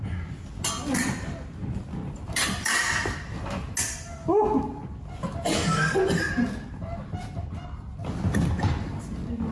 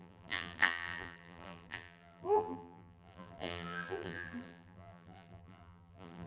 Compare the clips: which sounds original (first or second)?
first